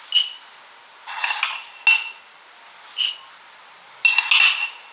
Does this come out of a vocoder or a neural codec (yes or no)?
no